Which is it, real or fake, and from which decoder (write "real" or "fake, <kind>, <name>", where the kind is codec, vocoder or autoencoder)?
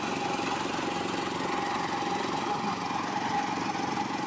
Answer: real